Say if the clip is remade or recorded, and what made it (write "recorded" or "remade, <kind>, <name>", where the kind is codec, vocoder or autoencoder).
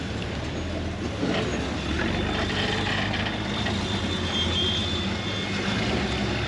recorded